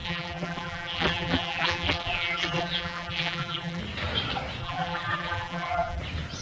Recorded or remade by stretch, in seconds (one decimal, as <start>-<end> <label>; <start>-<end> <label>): 0.0-3.8 remade; 3.8-4.6 recorded; 4.6-6.0 remade; 6.0-6.4 recorded